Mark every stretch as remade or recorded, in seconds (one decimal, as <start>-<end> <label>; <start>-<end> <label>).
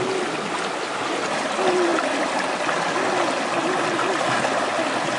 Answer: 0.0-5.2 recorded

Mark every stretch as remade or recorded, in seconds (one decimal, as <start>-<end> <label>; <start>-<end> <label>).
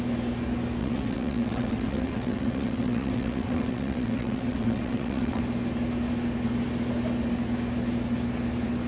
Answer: 0.0-0.8 recorded; 0.8-5.4 remade; 5.4-8.9 recorded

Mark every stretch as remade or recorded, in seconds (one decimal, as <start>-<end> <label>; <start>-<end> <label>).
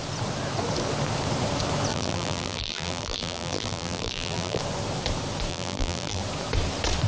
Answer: 0.0-1.9 recorded; 1.9-4.6 remade; 4.6-5.5 recorded; 5.5-6.2 remade; 6.2-7.1 recorded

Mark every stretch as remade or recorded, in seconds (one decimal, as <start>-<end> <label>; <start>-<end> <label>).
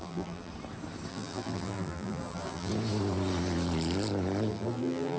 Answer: 0.0-0.5 remade; 0.5-1.1 recorded; 1.1-2.7 remade; 2.7-4.5 recorded; 4.5-5.2 remade